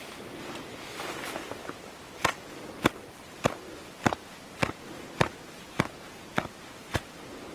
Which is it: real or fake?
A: real